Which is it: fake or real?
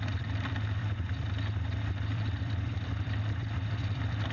fake